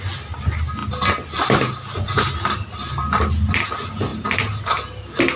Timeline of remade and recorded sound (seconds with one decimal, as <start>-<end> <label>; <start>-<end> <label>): 0.0-5.4 recorded